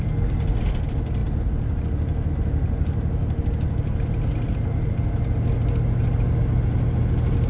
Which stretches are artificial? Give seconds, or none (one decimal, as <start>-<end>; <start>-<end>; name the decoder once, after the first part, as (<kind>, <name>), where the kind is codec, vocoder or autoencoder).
none